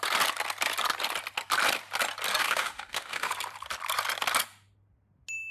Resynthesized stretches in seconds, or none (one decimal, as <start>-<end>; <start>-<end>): 2.4-3.3

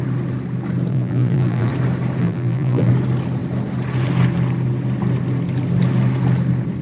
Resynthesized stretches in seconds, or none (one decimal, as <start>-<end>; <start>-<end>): 0.9-1.7; 2.2-2.9